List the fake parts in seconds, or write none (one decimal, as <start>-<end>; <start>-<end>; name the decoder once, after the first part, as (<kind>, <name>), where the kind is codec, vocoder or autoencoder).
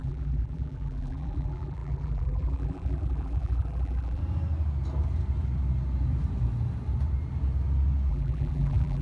0.0-4.2 (vocoder, BigVGAN v2); 8.1-9.0